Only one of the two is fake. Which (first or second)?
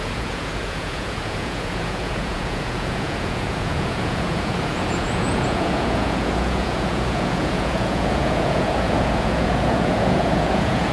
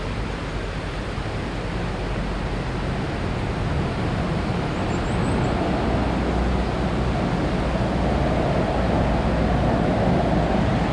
first